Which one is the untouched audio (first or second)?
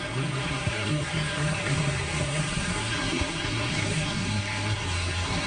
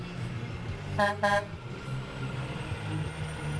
second